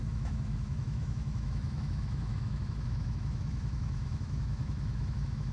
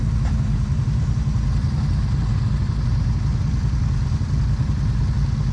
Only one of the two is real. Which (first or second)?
second